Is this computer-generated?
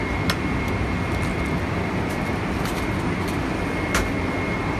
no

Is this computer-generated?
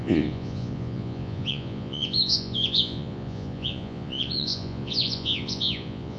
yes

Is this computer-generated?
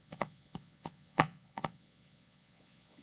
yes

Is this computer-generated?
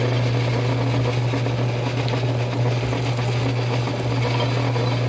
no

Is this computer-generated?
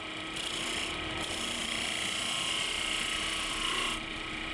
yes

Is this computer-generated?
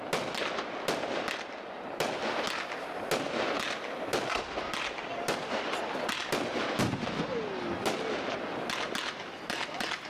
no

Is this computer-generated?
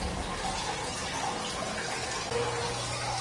no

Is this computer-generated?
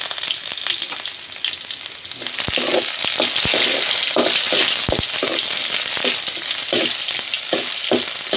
no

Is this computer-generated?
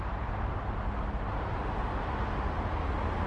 no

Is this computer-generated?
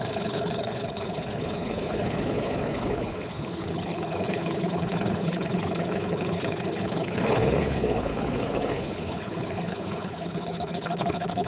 yes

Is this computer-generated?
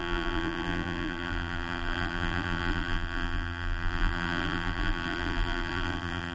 yes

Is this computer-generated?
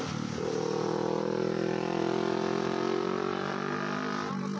no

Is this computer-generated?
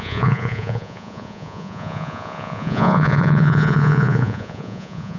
yes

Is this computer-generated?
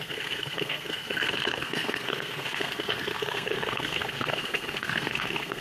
yes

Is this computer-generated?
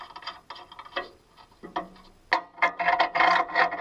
no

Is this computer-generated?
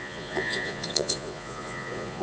yes